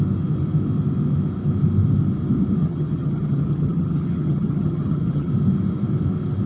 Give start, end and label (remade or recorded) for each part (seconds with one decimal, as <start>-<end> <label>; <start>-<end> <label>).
0.0-2.6 recorded; 2.6-5.3 remade; 5.3-6.5 recorded